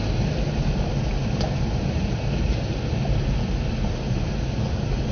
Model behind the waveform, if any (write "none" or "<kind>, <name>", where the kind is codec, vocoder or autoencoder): none